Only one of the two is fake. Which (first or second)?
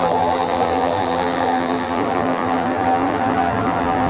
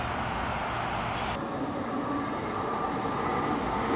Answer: first